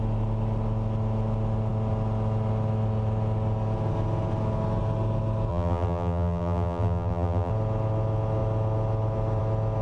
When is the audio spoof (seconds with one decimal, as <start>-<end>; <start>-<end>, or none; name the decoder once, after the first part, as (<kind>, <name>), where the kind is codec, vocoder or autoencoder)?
5.5-7.5 (vocoder, BigVGAN v2)